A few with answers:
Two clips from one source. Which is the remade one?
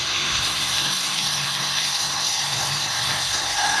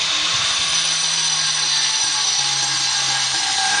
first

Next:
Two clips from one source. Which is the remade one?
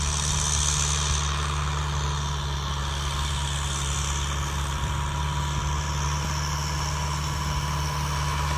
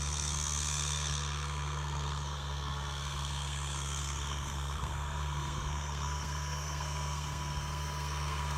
second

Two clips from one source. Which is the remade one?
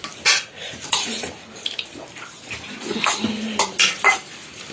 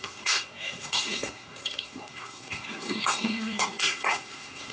second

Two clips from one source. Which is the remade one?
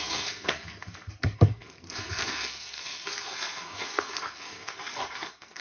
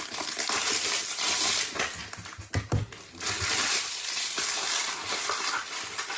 first